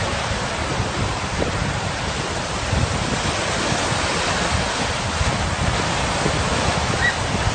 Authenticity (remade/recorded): recorded